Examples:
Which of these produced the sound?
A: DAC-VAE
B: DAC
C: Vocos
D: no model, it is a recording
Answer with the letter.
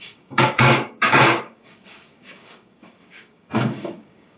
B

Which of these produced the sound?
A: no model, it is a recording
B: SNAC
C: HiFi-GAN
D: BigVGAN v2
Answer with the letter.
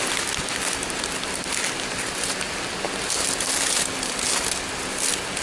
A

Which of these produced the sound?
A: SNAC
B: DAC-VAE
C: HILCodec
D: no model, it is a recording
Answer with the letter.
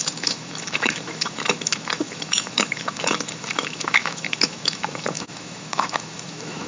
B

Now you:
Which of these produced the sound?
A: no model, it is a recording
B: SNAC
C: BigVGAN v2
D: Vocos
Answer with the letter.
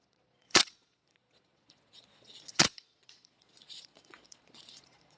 D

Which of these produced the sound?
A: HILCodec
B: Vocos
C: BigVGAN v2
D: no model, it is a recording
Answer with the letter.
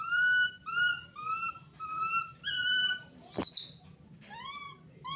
C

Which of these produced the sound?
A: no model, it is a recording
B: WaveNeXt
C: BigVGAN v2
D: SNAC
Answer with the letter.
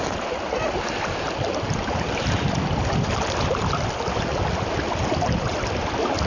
A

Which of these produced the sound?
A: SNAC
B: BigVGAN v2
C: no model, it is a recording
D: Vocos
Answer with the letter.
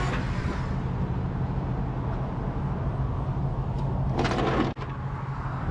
C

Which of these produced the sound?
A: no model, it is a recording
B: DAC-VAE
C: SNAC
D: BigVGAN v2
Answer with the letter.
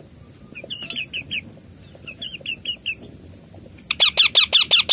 A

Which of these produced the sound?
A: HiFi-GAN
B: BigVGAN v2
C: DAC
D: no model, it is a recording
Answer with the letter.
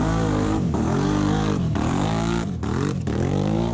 C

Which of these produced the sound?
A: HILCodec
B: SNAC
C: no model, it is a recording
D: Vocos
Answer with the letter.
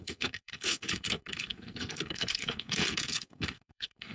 B